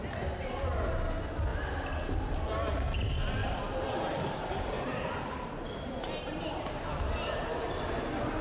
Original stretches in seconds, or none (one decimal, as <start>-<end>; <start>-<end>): 0.0-3.4; 7.0-8.4